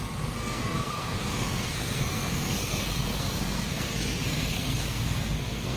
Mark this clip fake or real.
fake